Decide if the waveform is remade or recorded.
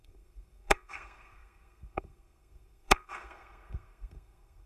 remade